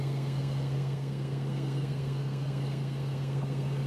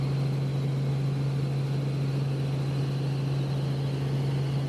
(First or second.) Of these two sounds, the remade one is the first